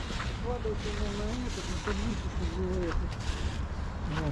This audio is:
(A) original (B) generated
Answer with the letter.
A